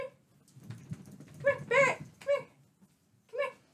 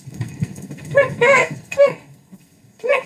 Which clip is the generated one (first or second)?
second